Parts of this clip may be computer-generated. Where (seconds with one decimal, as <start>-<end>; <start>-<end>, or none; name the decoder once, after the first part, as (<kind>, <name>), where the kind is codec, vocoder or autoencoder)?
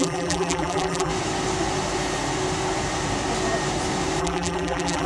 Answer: 0.0-1.1 (vocoder, BigVGAN v2); 4.2-5.1